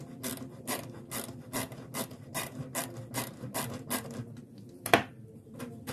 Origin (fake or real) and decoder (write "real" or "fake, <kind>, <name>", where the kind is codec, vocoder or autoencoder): fake, vocoder, BigVGAN v2